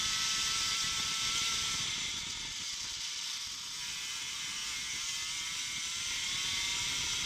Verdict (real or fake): real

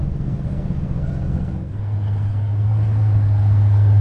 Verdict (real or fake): fake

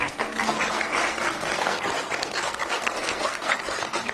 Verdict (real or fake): fake